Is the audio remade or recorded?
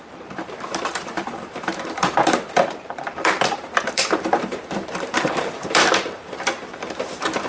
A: remade